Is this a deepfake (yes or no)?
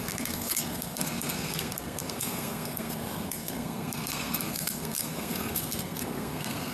yes